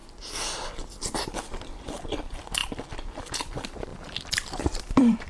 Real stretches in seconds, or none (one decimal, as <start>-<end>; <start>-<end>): 0.0-1.3; 2.6-3.5